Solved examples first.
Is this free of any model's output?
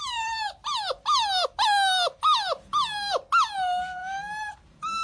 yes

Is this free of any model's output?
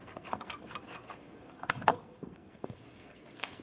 no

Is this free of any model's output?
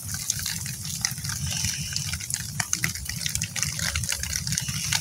yes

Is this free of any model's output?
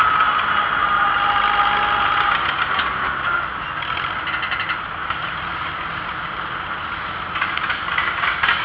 yes